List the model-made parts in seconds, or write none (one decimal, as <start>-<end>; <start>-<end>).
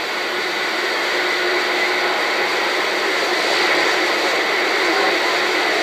none